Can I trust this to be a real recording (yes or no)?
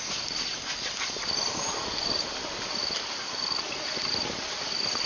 yes